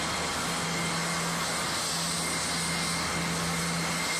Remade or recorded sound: recorded